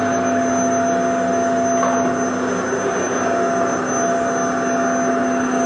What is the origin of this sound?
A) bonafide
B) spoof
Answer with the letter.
A